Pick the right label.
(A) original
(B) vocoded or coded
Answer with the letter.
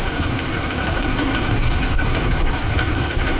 B